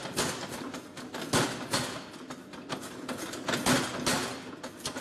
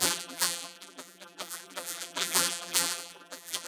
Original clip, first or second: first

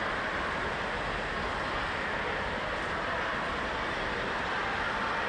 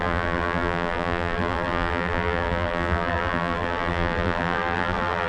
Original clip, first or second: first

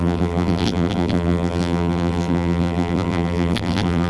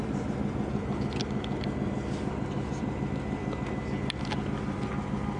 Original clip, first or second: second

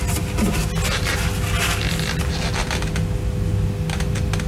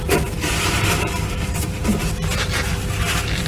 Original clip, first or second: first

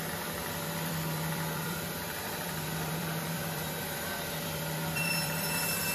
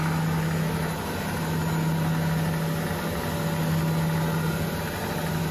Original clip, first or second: second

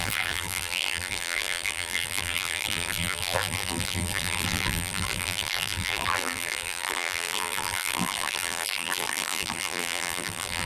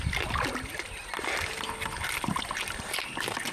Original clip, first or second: second